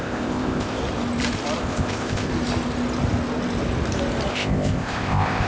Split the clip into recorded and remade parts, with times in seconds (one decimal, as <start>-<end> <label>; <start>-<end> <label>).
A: 0.0-0.8 remade; 0.8-1.6 recorded; 1.6-2.3 remade; 2.3-4.3 recorded; 4.3-5.5 remade